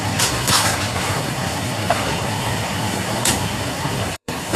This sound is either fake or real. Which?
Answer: fake